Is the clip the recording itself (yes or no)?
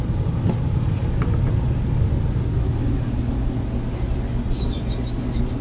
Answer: yes